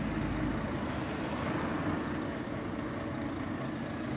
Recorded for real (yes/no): yes